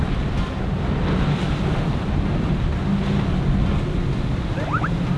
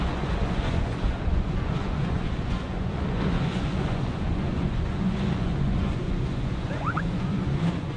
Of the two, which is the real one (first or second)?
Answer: first